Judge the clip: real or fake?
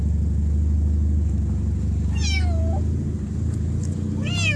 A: real